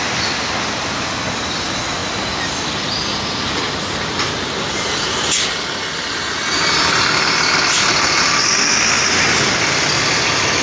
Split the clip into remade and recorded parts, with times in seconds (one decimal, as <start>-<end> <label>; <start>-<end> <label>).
0.0-10.6 recorded